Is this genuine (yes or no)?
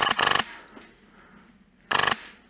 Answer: yes